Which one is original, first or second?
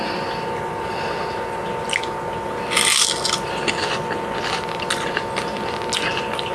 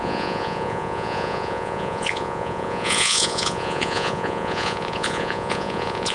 first